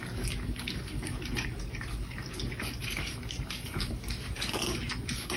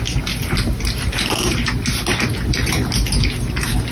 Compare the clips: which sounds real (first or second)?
second